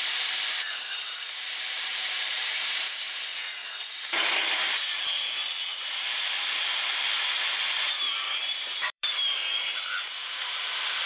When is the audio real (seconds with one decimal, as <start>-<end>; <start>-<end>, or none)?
3.3-3.9; 5.4-7.8